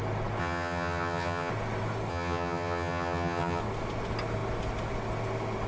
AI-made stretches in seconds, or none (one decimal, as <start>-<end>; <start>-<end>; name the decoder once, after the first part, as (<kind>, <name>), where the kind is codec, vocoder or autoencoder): 0.4-1.5 (vocoder, HiFi-GAN); 2.1-3.6

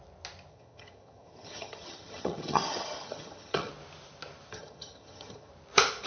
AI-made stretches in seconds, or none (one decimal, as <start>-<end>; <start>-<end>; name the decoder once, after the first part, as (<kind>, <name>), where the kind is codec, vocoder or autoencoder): 0.5-3.7 (vocoder, HiFi-GAN); 4.5-5.5